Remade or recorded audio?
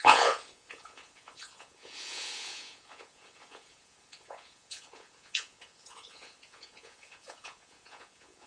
remade